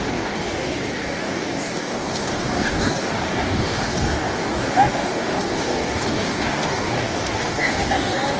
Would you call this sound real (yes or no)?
no